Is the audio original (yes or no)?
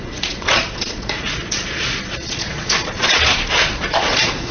no